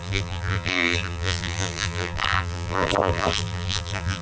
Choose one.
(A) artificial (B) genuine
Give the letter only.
A